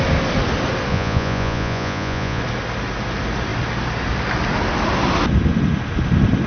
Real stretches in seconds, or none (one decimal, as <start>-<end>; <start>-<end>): 0.0-0.9; 2.4-6.5